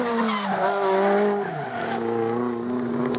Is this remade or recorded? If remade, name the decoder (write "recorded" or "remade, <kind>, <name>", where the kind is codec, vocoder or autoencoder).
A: recorded